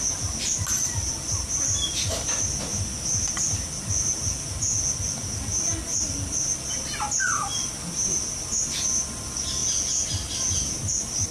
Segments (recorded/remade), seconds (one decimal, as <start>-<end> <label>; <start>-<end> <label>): 0.0-11.3 recorded